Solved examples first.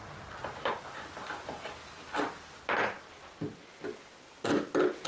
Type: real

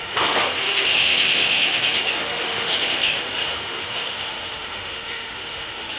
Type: fake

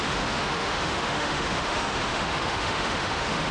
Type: fake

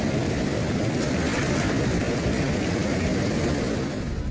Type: real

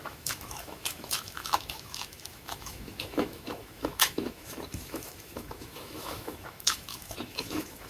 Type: fake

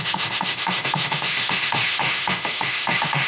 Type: fake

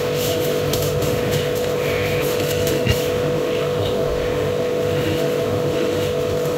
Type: fake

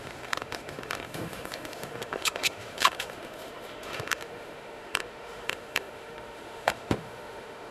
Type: fake